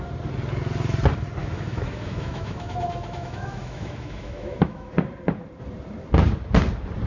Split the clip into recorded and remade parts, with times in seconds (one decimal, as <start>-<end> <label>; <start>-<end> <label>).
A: 0.0-1.4 recorded; 1.4-4.9 remade; 4.9-7.1 recorded